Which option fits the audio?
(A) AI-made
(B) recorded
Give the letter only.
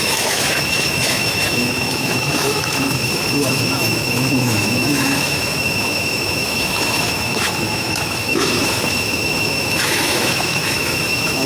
A